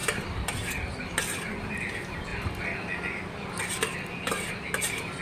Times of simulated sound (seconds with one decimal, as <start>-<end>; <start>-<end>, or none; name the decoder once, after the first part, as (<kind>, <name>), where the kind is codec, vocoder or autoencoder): 0.0-1.8 (vocoder, BigVGAN v2)